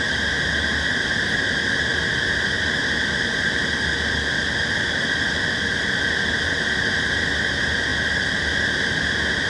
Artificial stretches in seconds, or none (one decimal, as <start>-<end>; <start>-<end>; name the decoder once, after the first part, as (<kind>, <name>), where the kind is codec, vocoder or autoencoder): none